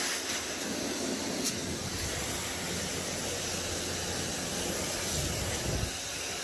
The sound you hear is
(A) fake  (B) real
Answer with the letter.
B